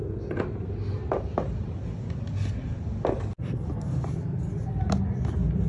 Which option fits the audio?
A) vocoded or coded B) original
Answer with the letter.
B